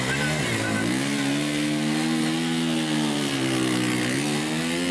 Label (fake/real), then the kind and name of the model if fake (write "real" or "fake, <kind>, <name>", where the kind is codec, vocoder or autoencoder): real